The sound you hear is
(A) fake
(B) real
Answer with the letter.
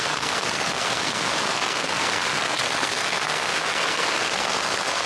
A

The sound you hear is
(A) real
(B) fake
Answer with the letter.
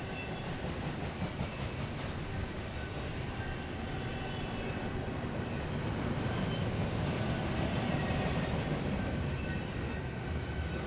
A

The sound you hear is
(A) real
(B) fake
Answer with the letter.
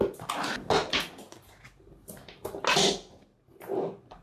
A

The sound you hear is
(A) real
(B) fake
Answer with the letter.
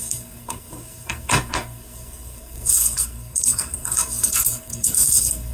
B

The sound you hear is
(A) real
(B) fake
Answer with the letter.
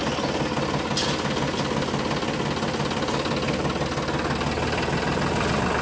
A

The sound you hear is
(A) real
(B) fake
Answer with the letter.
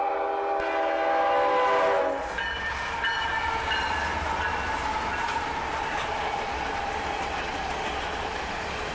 A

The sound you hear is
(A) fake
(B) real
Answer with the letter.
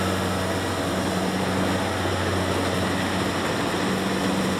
B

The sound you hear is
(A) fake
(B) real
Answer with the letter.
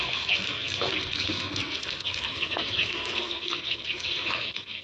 A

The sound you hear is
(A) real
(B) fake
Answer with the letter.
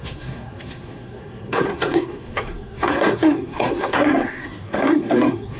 B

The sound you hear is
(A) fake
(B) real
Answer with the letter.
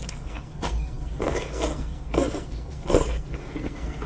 A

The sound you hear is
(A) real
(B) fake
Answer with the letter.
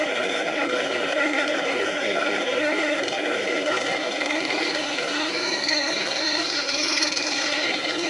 B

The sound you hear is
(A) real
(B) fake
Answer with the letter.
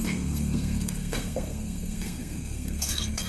B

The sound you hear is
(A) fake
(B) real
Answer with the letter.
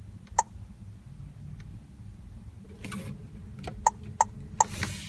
B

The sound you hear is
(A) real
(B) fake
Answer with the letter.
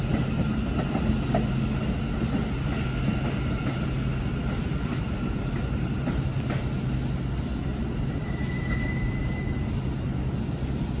A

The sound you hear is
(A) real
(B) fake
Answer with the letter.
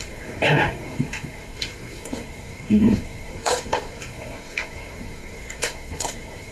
B